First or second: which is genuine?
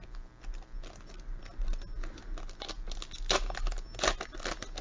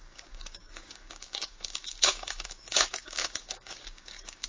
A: first